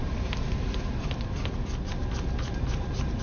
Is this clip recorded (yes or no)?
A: no